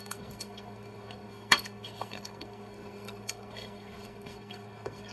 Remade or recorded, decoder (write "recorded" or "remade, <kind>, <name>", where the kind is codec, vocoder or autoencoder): remade, codec, SNAC